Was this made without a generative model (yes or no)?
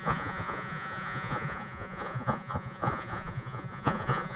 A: no